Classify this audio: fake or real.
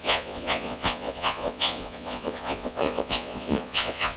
fake